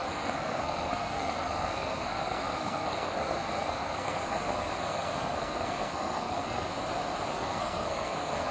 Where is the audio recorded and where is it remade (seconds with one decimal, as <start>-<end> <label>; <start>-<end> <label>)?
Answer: 0.0-6.7 remade; 6.7-7.3 recorded; 7.3-8.5 remade